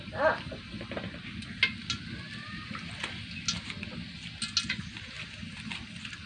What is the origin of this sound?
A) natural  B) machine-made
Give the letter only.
A